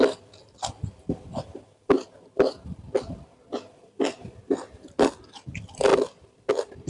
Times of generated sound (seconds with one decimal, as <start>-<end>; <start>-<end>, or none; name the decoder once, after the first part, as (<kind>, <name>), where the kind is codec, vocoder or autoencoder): none